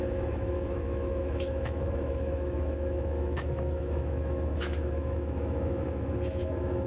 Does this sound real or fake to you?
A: fake